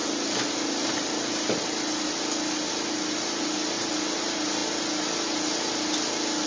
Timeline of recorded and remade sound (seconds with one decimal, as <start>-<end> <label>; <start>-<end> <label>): 0.0-6.5 recorded